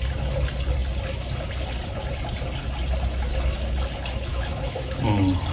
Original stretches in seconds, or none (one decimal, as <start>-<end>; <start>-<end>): 0.0-4.3; 5.0-5.5